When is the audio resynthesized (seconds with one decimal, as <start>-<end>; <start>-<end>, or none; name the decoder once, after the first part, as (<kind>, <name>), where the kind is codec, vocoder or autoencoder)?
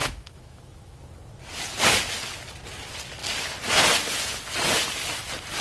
0.0-1.0 (autoencoder, DAC-VAE)